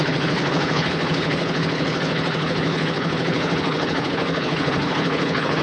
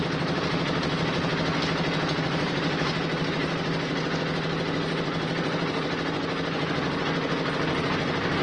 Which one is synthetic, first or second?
first